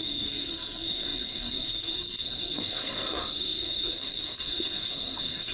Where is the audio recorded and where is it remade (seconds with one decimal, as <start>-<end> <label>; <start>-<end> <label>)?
0.0-5.5 remade